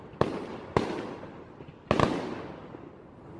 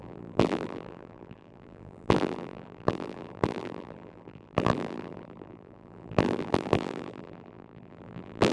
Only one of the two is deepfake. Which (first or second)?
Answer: second